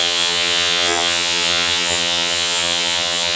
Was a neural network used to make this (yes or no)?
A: yes